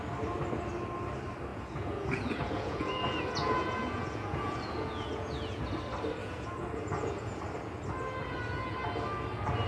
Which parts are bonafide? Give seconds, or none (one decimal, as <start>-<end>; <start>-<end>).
0.0-1.5; 5.6-6.2; 7.4-9.7